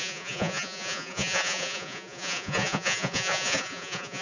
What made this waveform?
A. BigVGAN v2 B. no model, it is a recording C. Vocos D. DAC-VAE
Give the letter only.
C